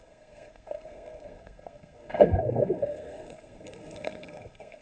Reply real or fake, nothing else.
fake